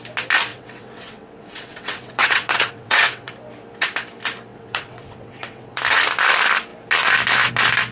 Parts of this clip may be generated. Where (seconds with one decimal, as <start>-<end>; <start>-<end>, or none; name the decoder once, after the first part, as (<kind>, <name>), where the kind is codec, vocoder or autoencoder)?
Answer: 0.5-3.3 (vocoder, WaveNeXt); 4.5-5.8